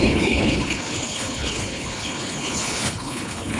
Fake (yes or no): yes